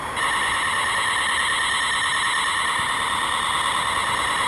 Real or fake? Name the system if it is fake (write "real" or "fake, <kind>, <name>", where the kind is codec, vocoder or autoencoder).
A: real